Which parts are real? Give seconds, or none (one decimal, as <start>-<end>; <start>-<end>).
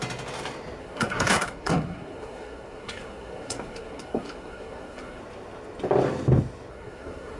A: 0.0-0.8; 5.2-6.7